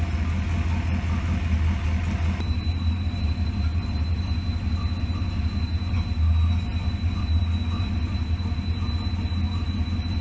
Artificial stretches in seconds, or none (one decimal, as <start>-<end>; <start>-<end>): none